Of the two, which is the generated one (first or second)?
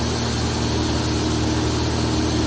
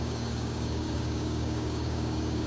second